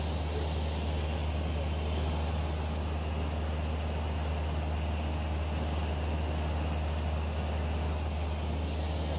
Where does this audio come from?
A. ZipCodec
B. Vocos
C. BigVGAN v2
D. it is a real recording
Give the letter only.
D